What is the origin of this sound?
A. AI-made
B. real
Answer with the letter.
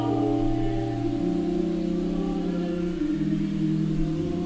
B